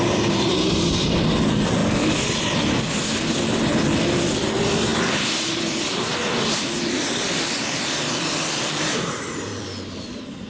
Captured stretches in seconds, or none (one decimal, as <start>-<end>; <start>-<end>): 0.0-10.5